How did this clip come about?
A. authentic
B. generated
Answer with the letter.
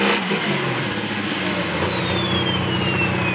A